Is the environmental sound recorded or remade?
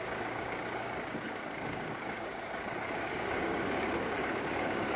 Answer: remade